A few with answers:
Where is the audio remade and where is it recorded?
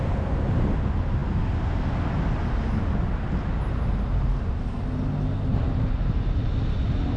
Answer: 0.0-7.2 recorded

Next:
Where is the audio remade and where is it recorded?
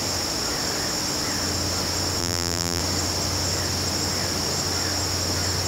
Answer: 0.0-2.2 recorded; 2.2-2.8 remade; 2.8-5.7 recorded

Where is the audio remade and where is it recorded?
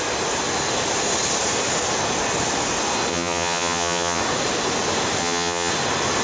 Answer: 0.0-3.1 recorded; 3.1-4.2 remade; 4.2-5.2 recorded; 5.2-5.7 remade; 5.7-6.2 recorded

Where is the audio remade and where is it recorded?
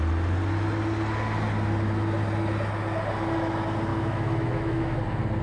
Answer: 0.0-3.9 recorded; 3.9-5.0 remade; 5.0-5.4 recorded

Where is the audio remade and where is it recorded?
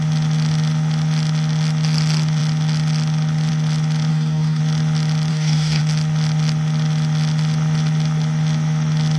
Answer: 0.0-4.1 recorded; 4.1-4.6 remade; 4.6-5.3 recorded; 5.3-5.8 remade; 5.8-9.2 recorded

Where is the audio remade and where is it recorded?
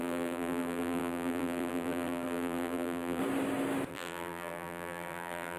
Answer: 0.0-3.2 remade; 3.2-3.9 recorded; 3.9-5.6 remade